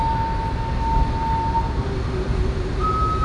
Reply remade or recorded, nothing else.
recorded